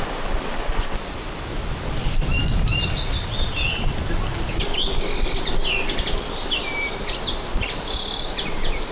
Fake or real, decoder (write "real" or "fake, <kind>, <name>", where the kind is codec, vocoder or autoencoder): fake, vocoder, BigVGAN v2